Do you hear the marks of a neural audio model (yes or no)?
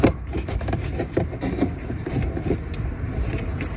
yes